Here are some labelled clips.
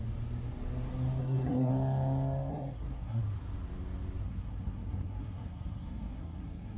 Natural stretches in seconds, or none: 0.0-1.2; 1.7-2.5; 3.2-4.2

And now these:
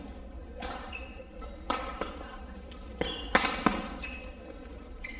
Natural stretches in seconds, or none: 0.0-0.4; 1.3-1.9; 2.7-5.2

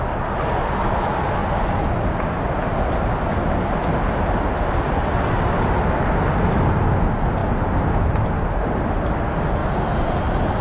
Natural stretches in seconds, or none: 0.0-10.6

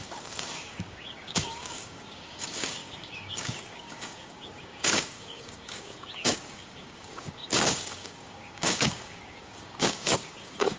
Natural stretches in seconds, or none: none

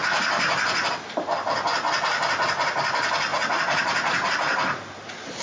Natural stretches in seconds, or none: 0.0-3.3; 4.3-5.4

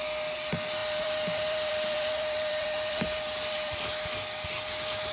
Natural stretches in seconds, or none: 0.0-0.8; 3.9-5.1

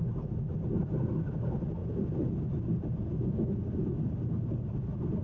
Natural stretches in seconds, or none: 0.0-5.2

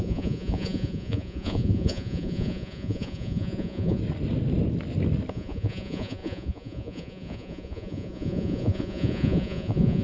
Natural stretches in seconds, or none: 4.0-5.3